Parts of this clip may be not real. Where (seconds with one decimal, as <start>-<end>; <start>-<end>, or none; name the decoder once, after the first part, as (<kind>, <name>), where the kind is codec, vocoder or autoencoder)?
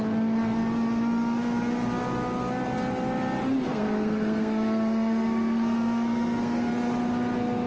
3.7-6.7 (codec, SNAC)